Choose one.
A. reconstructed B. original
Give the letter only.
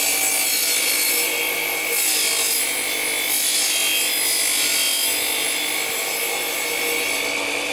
B